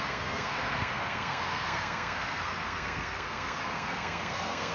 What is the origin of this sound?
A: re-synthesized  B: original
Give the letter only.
A